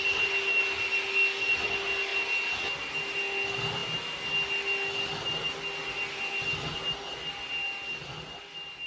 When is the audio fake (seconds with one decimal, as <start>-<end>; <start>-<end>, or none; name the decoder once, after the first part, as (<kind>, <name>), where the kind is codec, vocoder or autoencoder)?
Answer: none